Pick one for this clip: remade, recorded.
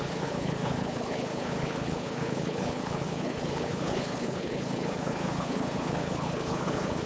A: remade